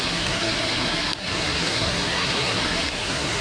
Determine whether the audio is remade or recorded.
remade